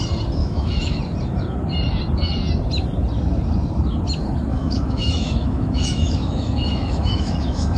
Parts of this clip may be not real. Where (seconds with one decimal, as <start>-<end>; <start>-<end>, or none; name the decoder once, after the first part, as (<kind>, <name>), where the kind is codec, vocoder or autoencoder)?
0.4-1.0 (autoencoder, DAC-VAE); 4.5-7.8